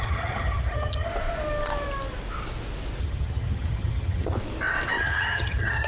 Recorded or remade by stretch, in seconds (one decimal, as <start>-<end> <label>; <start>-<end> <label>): 0.0-1.1 remade; 1.1-3.0 recorded; 3.0-4.4 remade; 4.4-5.0 recorded; 5.0-5.9 remade